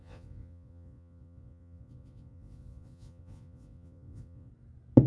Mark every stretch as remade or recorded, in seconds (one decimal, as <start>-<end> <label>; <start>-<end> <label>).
0.0-4.5 remade; 4.5-5.1 recorded